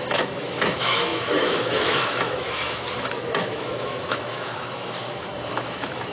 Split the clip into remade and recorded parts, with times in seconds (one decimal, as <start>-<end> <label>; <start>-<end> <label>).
0.0-6.1 remade